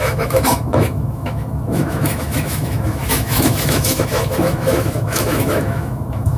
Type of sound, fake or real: fake